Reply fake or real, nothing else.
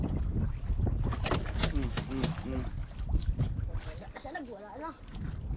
real